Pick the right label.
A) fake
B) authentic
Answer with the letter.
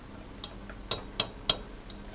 B